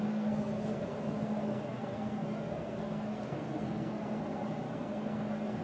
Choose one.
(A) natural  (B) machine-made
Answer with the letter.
B